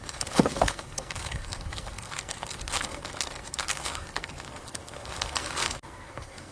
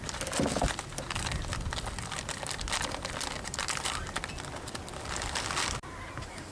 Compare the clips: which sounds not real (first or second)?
first